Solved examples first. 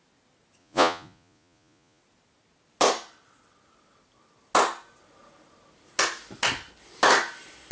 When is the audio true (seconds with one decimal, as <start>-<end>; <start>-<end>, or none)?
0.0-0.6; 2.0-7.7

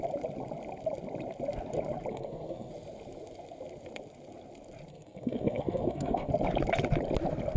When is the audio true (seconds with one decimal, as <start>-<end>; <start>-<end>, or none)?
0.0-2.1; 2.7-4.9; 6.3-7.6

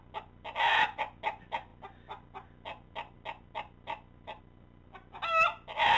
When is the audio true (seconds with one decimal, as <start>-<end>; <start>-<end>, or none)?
0.0-6.0

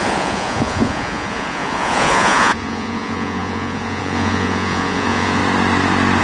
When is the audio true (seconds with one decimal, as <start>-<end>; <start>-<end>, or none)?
5.4-6.2

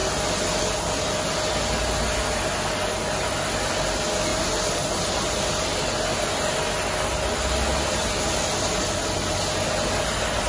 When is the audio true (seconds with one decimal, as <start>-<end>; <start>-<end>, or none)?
0.0-4.3; 5.8-10.5

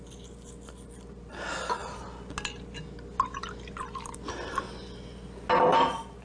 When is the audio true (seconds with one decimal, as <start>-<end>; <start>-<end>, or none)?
0.0-6.2

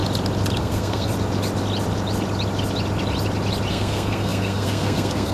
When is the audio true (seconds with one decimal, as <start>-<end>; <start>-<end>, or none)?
0.0-0.6; 1.1-3.7